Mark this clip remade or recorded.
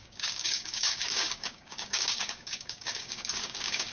remade